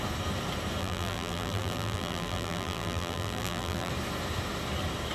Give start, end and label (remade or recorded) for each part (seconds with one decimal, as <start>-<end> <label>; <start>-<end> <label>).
0.0-0.8 recorded; 0.8-3.9 remade; 3.9-5.1 recorded